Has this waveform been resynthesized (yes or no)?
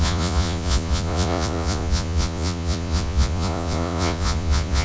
yes